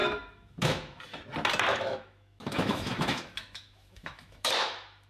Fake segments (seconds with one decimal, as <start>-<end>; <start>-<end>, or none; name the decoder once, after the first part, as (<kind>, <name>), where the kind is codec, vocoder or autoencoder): 0.0-1.0 (autoencoder, DAC-VAE); 1.7-5.1